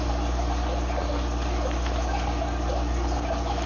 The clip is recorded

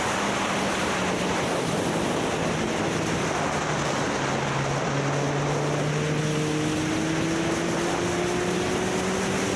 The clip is recorded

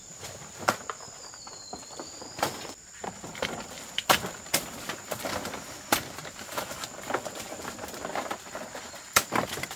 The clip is remade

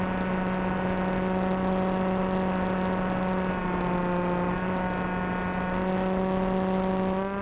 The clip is recorded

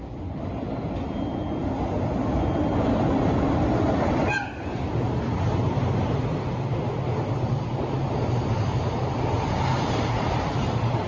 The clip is recorded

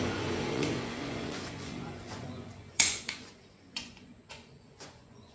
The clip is remade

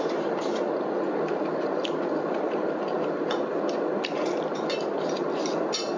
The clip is recorded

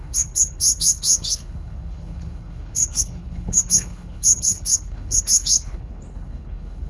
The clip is remade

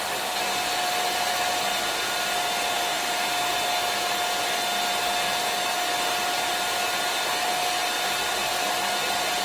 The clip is recorded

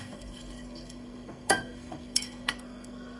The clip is remade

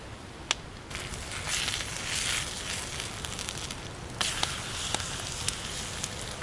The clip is recorded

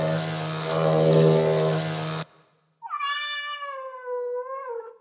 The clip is recorded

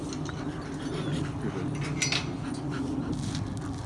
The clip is recorded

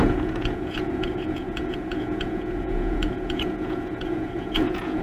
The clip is remade